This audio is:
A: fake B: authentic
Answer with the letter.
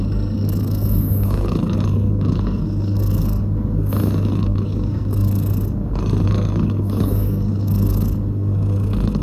A